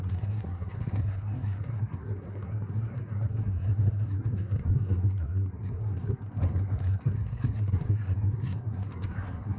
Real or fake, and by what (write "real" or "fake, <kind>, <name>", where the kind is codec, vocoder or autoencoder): fake, codec, SNAC